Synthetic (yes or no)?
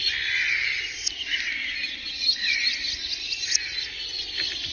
no